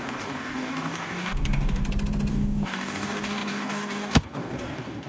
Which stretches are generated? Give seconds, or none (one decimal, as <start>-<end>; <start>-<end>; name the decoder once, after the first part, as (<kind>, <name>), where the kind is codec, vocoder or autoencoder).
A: 0.0-1.8 (codec, DAC); 2.3-5.1